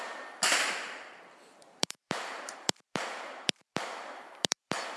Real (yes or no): no